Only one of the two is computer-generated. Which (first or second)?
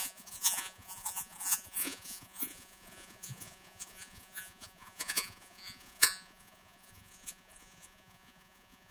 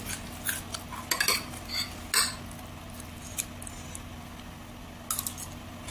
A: first